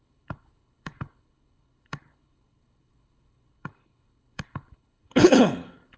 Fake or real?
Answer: fake